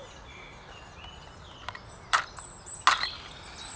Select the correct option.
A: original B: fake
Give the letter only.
A